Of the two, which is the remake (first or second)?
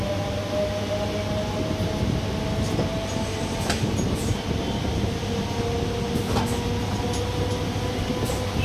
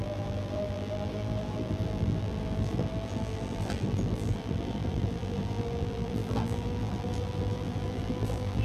second